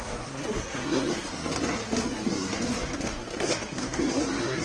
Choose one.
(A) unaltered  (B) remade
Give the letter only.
B